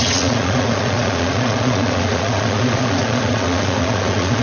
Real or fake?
fake